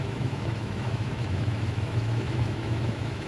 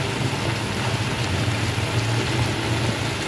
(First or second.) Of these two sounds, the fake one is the first